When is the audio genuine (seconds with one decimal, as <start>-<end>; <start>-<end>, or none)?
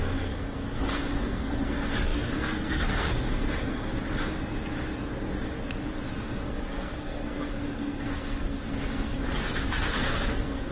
3.9-6.1